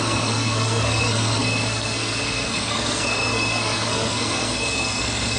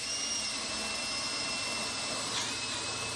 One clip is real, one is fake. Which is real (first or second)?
second